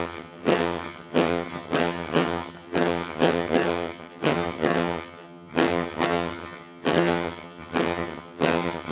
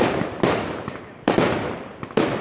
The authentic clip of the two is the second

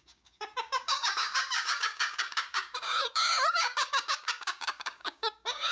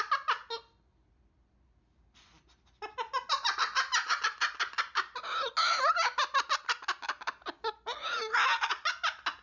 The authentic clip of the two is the second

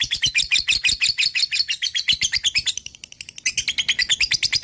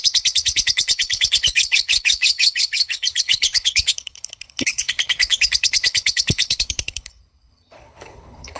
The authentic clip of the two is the first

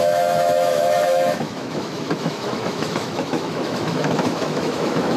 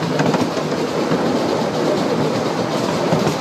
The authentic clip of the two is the second